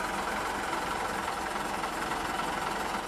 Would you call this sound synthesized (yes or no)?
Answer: no